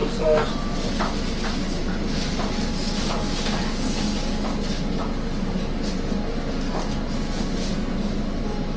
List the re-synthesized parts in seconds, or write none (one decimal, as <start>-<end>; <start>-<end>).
0.0-0.5